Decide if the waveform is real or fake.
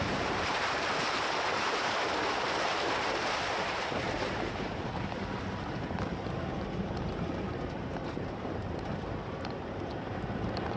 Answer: fake